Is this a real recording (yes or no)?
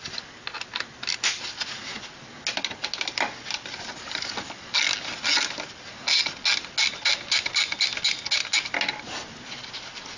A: yes